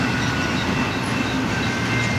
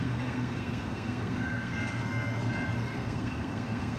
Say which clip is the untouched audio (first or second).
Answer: first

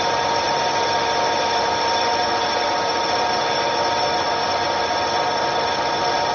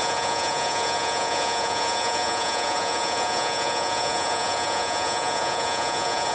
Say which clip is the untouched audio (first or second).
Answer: first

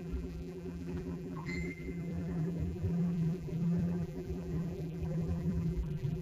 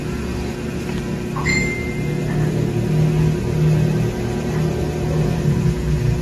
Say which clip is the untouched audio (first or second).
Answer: second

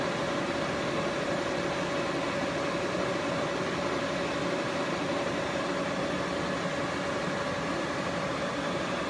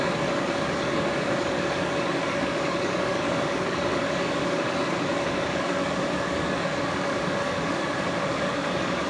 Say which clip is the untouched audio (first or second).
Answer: first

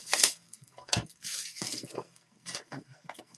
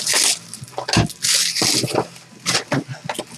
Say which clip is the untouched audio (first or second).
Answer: second